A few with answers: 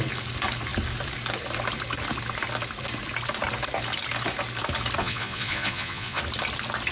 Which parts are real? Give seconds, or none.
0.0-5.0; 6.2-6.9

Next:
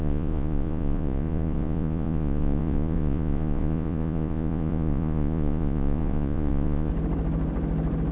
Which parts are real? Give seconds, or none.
6.9-8.1

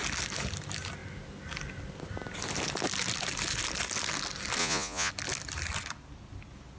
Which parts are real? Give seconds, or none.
0.0-4.6; 5.1-6.8

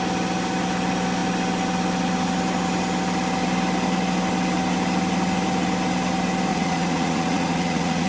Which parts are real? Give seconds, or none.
0.0-6.5

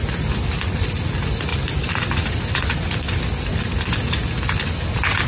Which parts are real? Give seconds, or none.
0.0-5.3

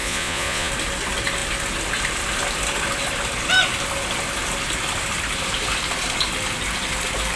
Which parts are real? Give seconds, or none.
0.7-7.4